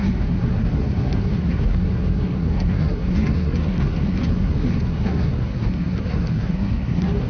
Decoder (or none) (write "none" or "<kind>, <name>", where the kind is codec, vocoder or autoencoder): codec, SNAC